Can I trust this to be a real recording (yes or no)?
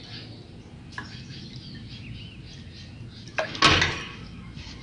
yes